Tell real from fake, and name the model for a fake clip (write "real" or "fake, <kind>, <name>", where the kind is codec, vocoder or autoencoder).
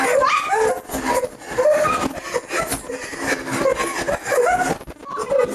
real